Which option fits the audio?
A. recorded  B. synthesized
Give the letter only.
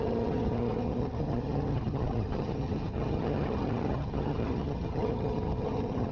B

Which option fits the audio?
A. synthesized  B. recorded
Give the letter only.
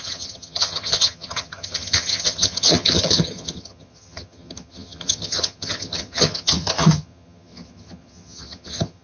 A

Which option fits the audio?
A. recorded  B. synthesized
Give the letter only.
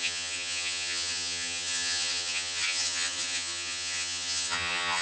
B